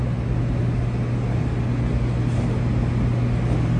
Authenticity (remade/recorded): recorded